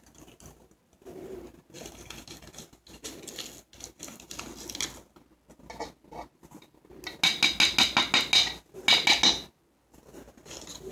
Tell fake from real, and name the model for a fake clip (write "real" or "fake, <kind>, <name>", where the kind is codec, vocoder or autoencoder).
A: real